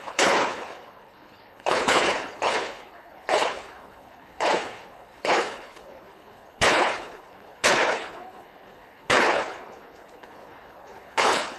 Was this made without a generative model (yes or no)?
no